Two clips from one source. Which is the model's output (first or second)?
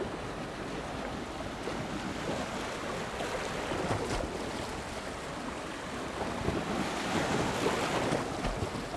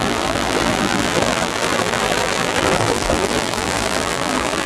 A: second